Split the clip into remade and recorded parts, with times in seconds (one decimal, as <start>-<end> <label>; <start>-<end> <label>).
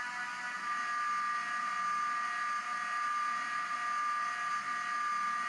0.0-5.5 recorded